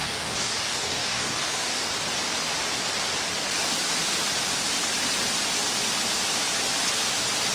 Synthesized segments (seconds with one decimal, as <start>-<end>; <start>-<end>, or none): 0.0-1.9

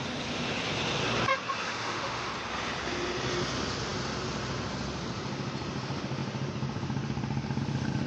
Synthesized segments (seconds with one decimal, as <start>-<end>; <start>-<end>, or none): 1.3-2.3

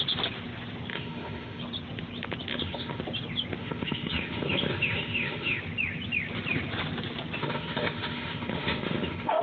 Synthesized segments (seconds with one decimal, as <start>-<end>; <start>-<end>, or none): 0.9-1.6; 2.5-3.0; 3.6-5.6; 7.4-9.4